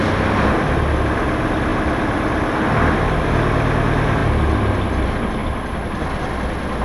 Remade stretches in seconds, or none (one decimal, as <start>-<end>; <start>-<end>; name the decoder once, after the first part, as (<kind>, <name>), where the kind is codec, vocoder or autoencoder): 1.7-2.2 (vocoder, BigVGAN v2)

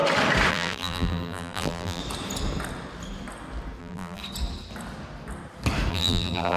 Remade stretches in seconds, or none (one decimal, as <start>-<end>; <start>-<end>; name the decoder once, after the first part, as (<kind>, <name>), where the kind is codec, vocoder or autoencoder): 0.5-2.0 (vocoder, BigVGAN v2); 3.8-4.2; 5.9-6.6